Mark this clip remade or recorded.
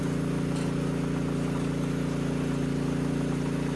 recorded